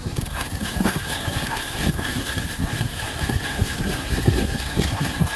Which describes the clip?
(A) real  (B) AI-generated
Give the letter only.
B